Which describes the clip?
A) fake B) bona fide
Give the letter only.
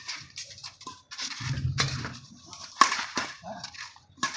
A